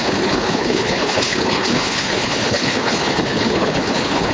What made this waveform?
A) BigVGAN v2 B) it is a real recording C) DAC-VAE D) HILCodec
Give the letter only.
D